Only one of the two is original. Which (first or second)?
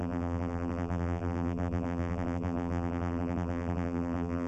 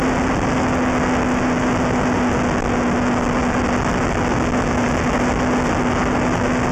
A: second